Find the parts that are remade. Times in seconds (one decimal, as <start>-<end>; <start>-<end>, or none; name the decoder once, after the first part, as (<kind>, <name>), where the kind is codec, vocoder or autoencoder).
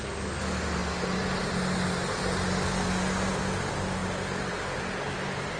none